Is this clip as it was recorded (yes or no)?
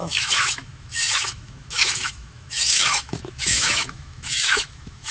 no